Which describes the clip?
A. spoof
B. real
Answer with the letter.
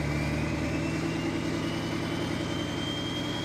B